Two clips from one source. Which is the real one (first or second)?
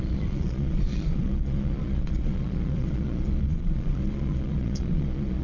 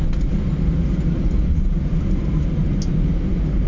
second